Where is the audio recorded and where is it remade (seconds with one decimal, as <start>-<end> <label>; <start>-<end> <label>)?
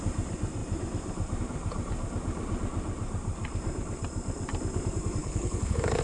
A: 0.0-5.2 recorded; 5.2-6.0 remade